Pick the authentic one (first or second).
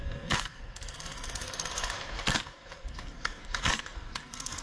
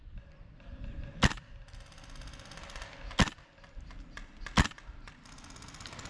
second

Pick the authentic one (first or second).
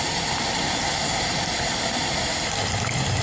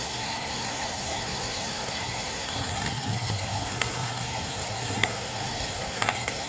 first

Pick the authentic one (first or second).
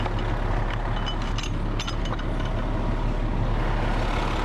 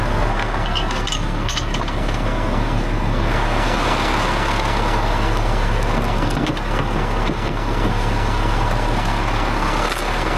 first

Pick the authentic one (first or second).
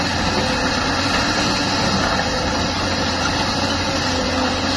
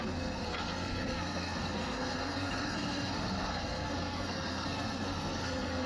first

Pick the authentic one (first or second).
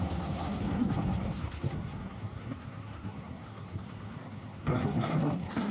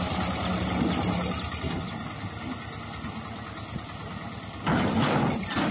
second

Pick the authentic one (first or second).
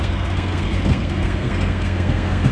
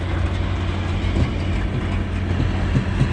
second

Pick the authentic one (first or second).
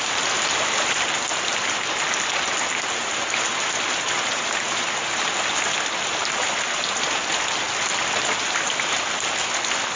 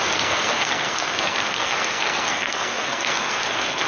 first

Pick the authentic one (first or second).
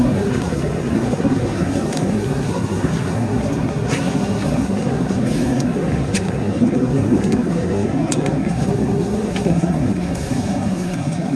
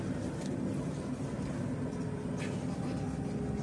second